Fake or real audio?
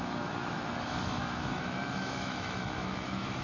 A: fake